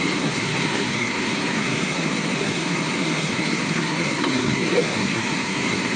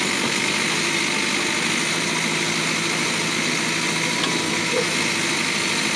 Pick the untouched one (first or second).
second